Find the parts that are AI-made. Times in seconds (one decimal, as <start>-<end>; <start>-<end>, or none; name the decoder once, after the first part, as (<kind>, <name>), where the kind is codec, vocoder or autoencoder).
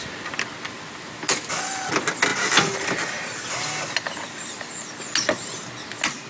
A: none